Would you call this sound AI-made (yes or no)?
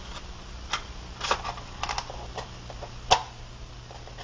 no